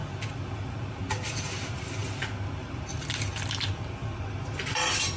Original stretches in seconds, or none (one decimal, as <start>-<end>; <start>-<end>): 0.0-5.2